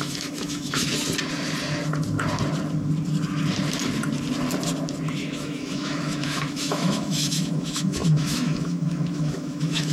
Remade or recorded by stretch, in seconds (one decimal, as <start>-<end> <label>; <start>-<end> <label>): 0.0-0.9 remade; 0.9-5.2 recorded; 5.2-9.9 remade